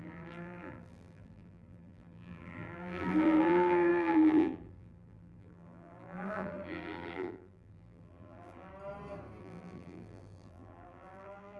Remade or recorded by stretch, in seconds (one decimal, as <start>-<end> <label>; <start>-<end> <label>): 0.0-8.7 remade; 8.7-9.4 recorded; 9.4-11.6 remade